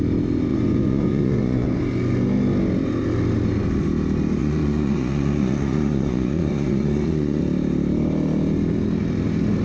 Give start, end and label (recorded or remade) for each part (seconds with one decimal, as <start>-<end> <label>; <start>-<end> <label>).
0.0-0.5 recorded; 0.5-1.8 remade; 1.8-4.4 recorded; 4.4-7.4 remade; 7.4-9.6 recorded